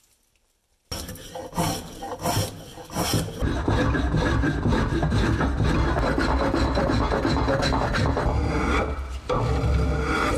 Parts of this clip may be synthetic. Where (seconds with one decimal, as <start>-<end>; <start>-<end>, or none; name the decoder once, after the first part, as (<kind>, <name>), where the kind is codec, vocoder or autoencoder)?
none